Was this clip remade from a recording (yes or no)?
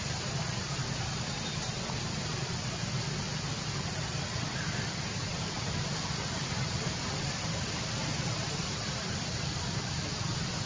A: yes